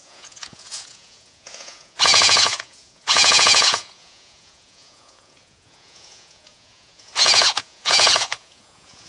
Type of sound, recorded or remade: remade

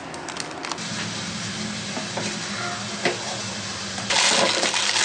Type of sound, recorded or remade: recorded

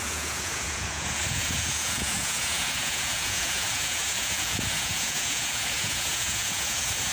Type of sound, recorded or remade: remade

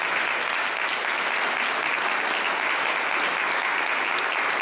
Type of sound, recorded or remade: recorded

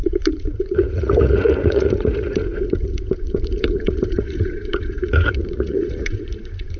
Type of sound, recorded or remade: remade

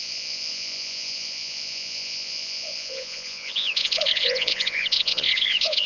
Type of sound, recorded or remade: remade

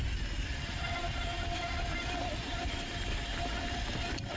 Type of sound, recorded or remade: recorded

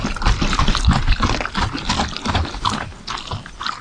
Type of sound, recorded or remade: recorded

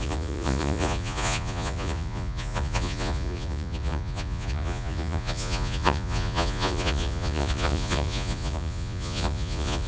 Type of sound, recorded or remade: remade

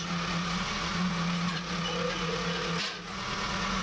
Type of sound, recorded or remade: remade